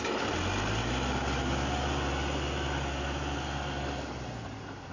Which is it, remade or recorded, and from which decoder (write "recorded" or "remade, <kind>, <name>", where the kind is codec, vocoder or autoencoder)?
recorded